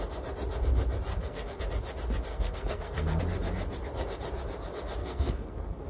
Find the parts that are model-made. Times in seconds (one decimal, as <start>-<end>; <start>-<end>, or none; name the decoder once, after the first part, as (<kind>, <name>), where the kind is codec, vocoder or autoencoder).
1.1-1.6 (codec, SNAC); 2.3-3.2; 5.0-5.9